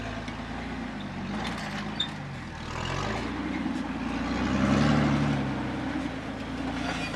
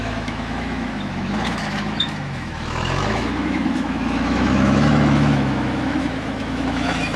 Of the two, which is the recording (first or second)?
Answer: first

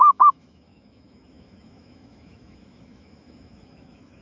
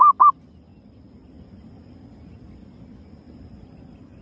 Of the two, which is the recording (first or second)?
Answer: second